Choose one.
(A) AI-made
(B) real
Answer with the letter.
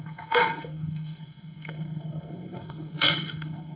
A